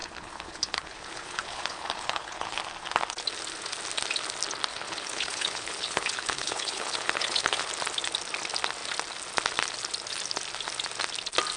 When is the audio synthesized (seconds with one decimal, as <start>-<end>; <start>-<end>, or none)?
0.0-2.6; 4.7-7.7